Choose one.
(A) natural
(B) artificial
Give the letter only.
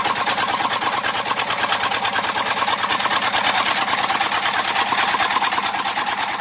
A